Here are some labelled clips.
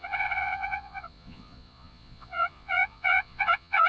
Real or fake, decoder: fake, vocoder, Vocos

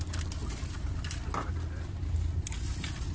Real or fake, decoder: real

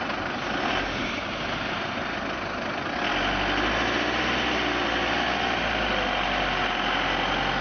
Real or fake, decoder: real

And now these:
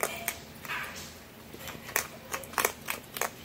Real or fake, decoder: real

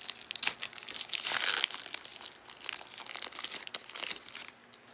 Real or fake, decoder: real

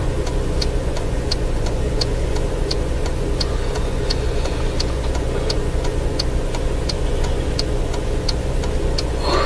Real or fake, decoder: fake, vocoder, Vocos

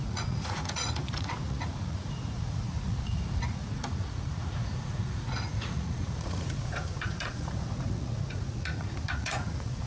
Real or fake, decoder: fake, vocoder, Vocos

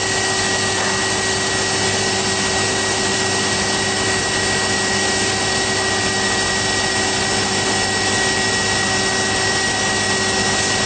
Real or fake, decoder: real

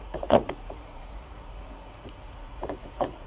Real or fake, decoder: fake, vocoder, Vocos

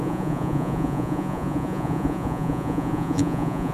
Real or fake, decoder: fake, vocoder, Vocos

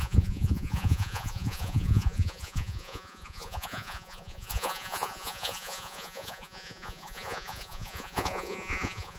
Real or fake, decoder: fake, vocoder, Vocos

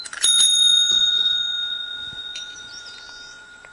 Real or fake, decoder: fake, vocoder, Vocos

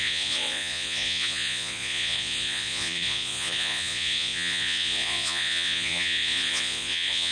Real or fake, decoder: fake, vocoder, Vocos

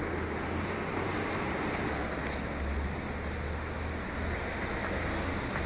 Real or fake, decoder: real